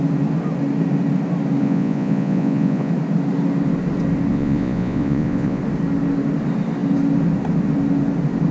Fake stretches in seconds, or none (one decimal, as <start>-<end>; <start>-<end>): 1.6-2.9; 4.3-5.6